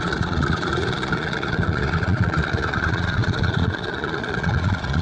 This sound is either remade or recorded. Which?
remade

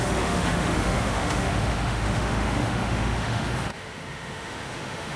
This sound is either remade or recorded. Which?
remade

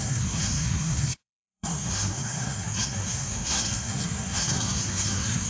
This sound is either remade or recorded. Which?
remade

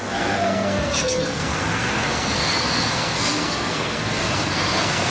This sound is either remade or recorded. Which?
remade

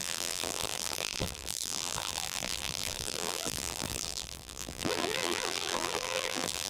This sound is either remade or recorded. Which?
remade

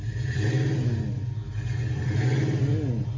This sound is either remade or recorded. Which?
recorded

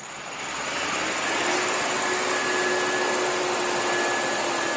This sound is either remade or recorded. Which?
recorded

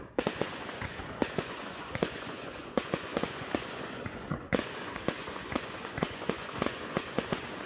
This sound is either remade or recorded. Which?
remade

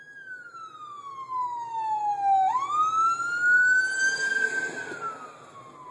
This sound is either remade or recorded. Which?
recorded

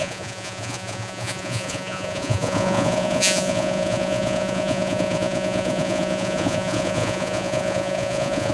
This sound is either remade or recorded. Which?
remade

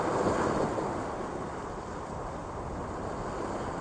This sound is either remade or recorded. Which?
recorded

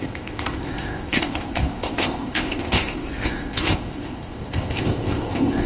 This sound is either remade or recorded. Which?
remade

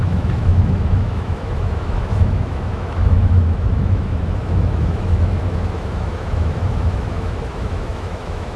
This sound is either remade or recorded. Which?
remade